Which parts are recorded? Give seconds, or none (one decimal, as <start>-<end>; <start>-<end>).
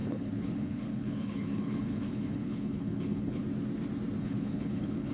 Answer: 3.4-4.2